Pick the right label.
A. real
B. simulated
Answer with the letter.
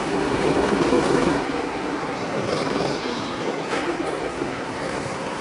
B